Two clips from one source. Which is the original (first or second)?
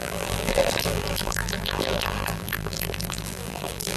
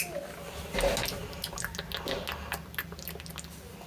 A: second